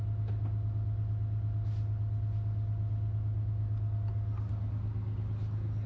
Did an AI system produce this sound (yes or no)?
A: no